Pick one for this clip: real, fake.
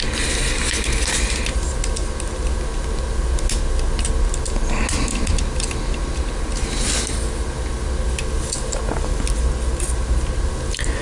real